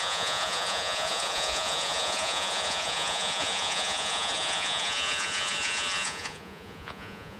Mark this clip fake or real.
fake